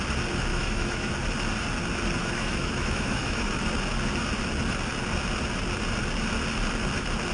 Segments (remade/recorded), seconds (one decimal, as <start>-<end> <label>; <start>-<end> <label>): 0.0-0.5 recorded; 0.5-1.1 remade; 1.1-2.2 recorded; 2.2-3.6 remade; 3.6-7.3 recorded